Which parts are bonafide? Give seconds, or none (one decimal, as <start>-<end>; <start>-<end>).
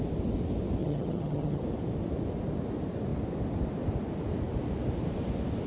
0.0-0.8; 1.6-5.7